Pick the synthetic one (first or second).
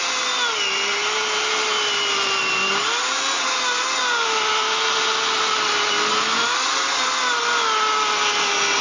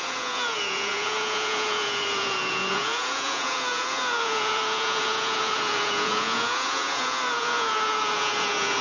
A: second